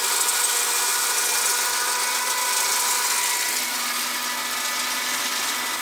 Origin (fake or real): real